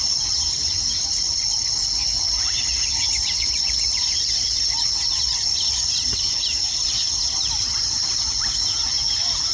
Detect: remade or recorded recorded